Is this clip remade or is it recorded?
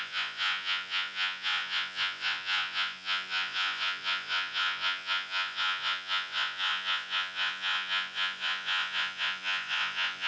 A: remade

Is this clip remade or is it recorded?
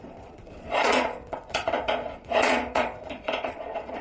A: remade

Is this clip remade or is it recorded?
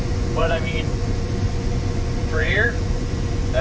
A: remade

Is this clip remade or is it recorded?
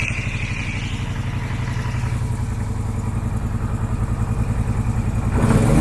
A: recorded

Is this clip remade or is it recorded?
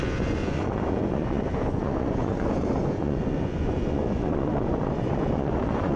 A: remade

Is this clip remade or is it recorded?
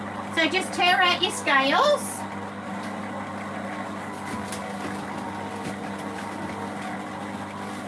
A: recorded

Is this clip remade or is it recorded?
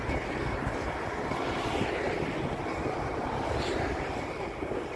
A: recorded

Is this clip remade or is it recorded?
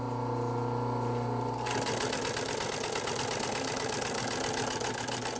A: recorded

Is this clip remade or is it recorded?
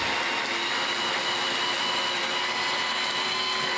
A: recorded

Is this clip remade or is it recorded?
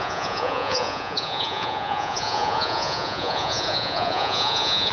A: remade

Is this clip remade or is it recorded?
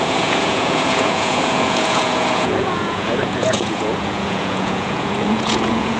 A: remade